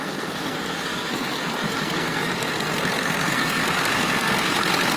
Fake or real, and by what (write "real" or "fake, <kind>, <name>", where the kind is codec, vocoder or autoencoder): fake, codec, SNAC